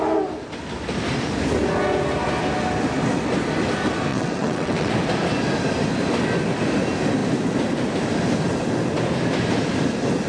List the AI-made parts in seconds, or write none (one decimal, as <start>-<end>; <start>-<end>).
4.1-4.9